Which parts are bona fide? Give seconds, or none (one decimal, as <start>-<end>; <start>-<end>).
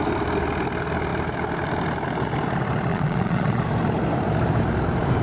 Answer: 0.0-2.9; 3.6-5.2